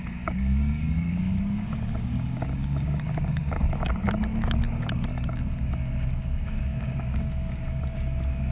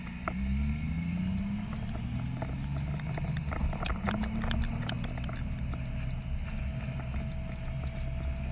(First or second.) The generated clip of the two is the first